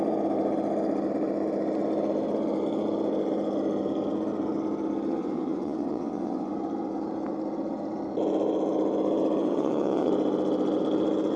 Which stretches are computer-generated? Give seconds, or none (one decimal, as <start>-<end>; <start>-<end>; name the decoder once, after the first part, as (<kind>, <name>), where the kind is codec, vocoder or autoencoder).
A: 5.1-6.5 (vocoder, WaveNeXt); 9.4-10.1